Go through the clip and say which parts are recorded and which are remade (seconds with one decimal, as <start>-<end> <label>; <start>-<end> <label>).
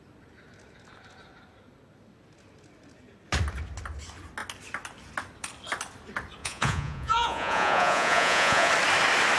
0.0-6.4 recorded; 6.4-8.7 remade; 8.7-9.4 recorded